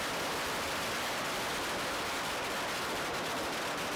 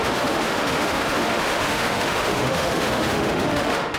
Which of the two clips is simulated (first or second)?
second